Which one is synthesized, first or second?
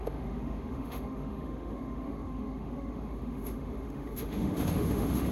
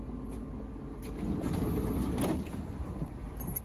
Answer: first